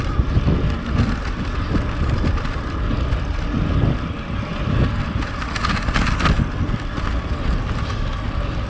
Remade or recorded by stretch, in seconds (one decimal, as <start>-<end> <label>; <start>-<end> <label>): 0.0-8.7 recorded